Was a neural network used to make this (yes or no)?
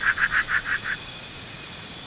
yes